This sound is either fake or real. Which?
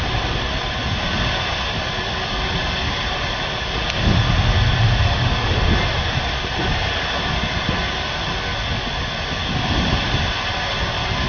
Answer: real